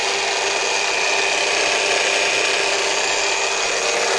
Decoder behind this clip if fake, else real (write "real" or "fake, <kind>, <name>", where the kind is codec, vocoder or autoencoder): real